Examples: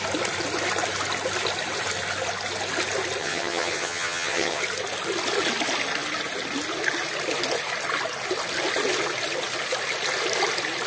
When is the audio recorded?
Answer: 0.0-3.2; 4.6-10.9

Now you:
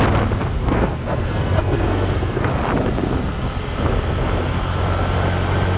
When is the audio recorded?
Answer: 0.0-0.6; 2.5-5.8

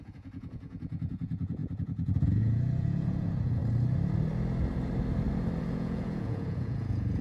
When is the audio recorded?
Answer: 3.6-5.6

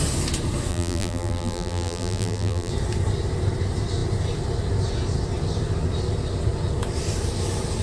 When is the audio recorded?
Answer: 0.0-0.7; 2.7-7.8

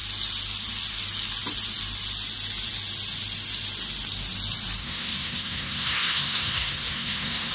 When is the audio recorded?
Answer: 0.0-4.8

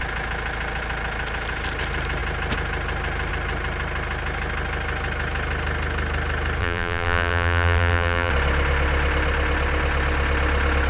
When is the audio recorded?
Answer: 0.0-6.6; 8.3-10.9